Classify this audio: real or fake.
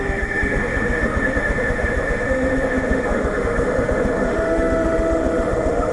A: fake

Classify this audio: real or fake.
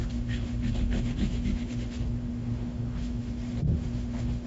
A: fake